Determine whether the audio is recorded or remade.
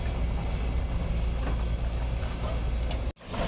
recorded